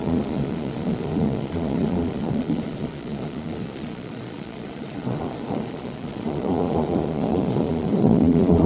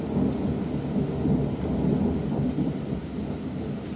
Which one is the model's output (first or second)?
first